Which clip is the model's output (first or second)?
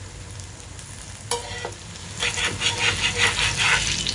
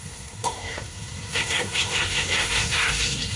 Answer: second